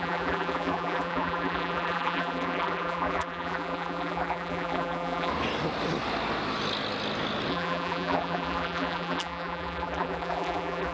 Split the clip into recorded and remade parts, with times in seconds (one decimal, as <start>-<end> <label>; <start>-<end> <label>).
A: 0.0-5.3 remade; 5.3-7.5 recorded; 7.5-10.9 remade

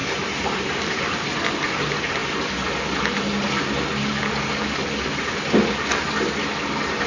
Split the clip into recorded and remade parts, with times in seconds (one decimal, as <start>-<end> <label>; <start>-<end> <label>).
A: 0.0-2.2 recorded; 2.2-4.3 remade; 4.3-7.1 recorded

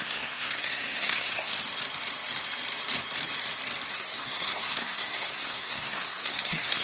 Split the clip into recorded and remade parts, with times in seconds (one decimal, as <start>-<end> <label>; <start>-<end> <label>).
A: 0.0-1.5 remade; 1.5-3.9 recorded; 3.9-6.8 remade

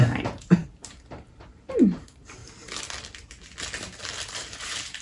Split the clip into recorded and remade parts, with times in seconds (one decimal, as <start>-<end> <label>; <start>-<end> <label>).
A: 0.0-2.4 remade; 2.4-4.3 recorded; 4.3-5.0 remade

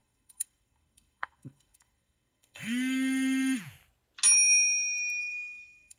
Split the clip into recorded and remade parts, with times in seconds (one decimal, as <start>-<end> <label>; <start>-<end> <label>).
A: 0.0-3.6 remade; 3.6-5.2 recorded; 5.2-6.0 remade

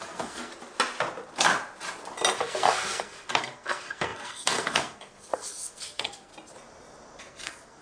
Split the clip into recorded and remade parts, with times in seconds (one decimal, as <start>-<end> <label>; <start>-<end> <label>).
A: 0.0-0.5 remade; 0.5-2.4 recorded; 2.4-6.3 remade; 6.3-7.2 recorded; 7.2-7.8 remade